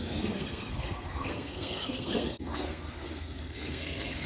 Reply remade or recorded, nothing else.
remade